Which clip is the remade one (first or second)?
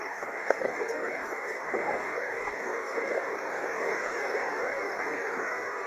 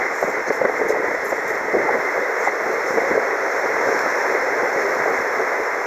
first